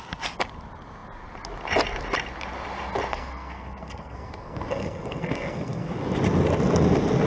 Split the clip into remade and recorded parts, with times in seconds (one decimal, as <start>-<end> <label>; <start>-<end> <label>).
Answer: 0.0-3.1 recorded; 3.1-5.9 remade; 5.9-7.3 recorded